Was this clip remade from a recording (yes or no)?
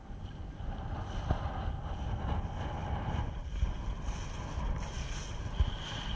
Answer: no